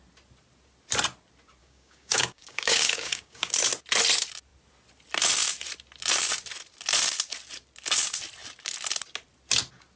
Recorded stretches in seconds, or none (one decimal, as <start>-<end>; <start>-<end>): 0.0-1.6; 3.5-10.0